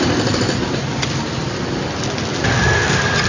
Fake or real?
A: real